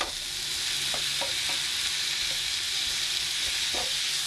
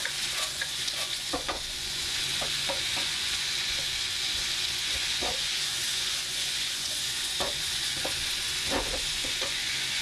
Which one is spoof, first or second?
second